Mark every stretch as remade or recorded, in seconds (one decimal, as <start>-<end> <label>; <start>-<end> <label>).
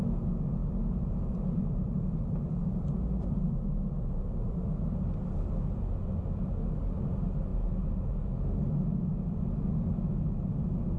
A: 0.0-11.0 recorded